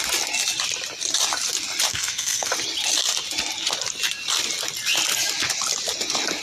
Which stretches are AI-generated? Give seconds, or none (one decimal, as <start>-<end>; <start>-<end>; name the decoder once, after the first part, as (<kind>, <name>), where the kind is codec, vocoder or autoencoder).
1.9-2.5 (codec, SNAC)